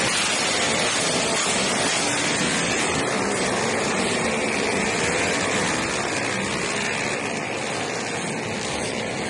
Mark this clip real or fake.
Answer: real